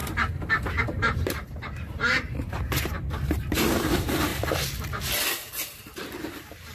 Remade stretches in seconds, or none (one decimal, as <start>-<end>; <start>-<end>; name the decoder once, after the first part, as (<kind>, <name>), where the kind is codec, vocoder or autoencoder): 0.8-4.3 (vocoder, BigVGAN v2); 5.5-6.7